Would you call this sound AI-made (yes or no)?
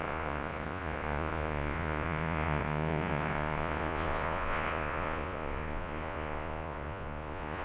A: yes